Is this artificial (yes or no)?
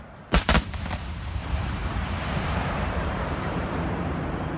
yes